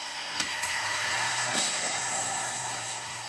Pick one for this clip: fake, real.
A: fake